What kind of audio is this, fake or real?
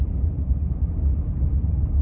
real